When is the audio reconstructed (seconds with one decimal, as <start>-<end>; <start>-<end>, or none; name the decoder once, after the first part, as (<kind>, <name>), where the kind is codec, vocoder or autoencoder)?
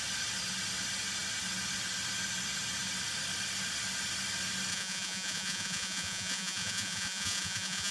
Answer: 4.7-7.9 (vocoder, Vocos)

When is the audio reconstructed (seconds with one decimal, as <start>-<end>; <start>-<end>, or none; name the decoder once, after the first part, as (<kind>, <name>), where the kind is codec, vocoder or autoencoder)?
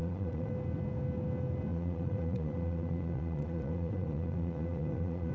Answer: 0.0-0.5 (vocoder, Vocos); 1.7-5.3